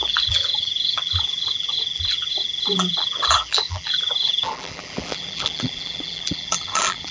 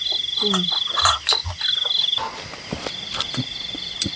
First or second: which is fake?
first